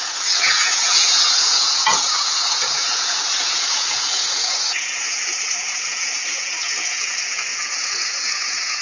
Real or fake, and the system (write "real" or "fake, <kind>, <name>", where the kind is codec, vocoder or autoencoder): fake, vocoder, Vocos